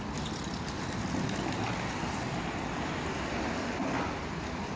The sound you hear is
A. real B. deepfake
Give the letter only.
A